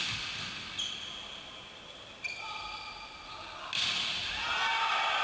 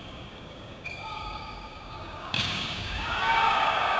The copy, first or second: second